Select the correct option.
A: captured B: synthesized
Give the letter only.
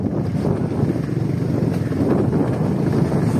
A